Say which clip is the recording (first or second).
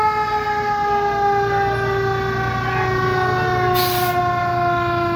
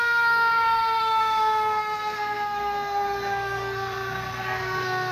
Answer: first